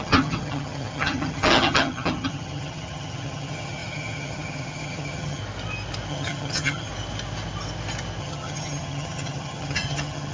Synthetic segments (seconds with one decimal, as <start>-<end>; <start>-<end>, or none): 0.0-5.4; 6.1-6.9; 8.2-10.3